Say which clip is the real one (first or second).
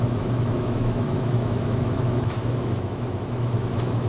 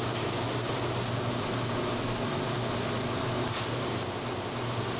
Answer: second